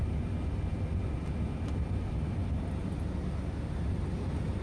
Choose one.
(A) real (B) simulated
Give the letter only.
A